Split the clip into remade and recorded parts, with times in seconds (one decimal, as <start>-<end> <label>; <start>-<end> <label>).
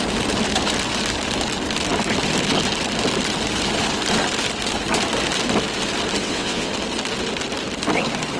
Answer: 0.0-6.2 recorded; 6.2-6.7 remade; 6.7-8.4 recorded